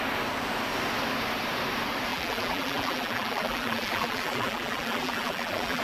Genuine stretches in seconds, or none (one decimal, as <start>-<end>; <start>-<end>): 0.0-2.1